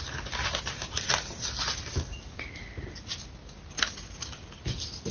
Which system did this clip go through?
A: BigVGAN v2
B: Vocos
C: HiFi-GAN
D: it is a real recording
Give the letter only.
D